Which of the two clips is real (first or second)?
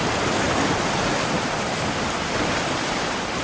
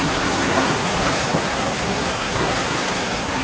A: first